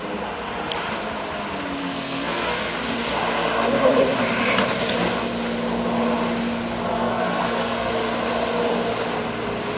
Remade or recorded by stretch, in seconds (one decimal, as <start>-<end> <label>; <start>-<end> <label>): 0.0-1.8 recorded; 1.8-2.7 remade; 2.7-6.9 recorded; 6.9-7.9 remade; 7.9-9.8 recorded